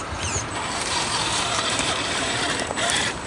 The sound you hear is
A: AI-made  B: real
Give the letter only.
A